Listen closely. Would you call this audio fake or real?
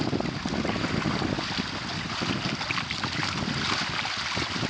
real